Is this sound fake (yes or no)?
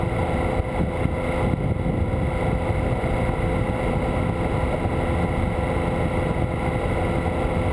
no